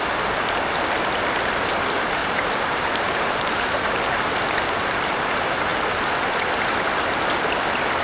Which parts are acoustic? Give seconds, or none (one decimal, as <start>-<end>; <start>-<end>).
0.0-2.2; 5.3-8.0